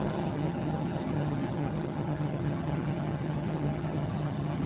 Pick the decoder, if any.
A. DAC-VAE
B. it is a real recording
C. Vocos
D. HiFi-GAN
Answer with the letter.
D